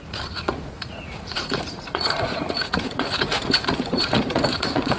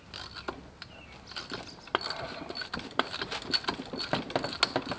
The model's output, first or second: first